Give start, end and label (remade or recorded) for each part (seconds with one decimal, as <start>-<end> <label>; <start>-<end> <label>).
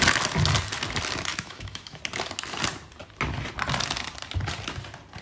0.0-1.3 recorded; 1.3-2.0 remade; 2.0-5.2 recorded